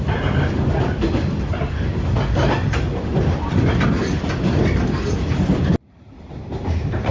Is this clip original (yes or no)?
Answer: yes